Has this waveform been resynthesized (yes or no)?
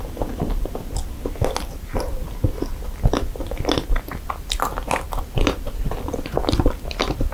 no